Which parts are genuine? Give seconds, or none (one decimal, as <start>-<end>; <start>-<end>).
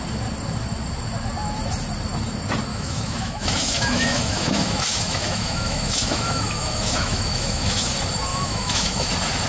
0.0-2.7; 7.9-8.3; 9.1-9.5